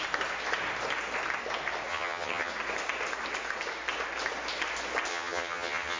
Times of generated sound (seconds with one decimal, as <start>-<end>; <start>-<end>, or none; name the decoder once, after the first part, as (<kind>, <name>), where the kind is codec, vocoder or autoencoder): 1.9-2.5 (vocoder, HiFi-GAN); 5.1-6.0